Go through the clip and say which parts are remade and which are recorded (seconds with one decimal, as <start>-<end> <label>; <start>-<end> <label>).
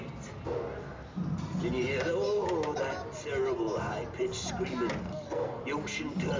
0.0-5.0 recorded; 5.0-5.6 remade; 5.6-6.4 recorded